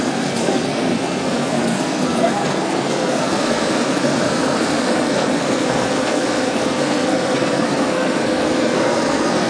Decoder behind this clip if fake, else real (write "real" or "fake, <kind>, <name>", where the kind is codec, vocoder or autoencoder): fake, codec, SNAC